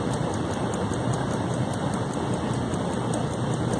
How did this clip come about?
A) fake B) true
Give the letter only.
B